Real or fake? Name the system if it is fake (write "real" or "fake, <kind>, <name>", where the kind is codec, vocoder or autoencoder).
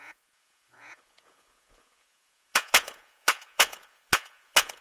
fake, vocoder, Vocos